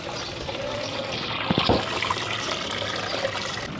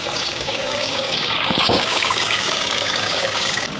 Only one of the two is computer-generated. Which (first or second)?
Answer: second